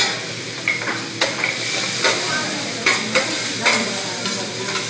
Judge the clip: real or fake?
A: real